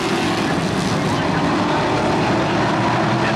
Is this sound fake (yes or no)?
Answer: no